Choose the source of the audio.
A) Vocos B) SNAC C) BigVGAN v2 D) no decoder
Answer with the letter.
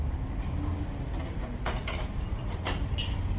D